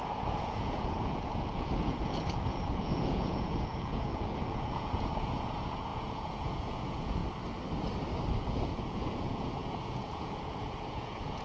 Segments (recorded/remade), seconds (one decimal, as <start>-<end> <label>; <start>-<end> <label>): 0.0-7.2 remade; 7.2-8.4 recorded; 8.4-11.4 remade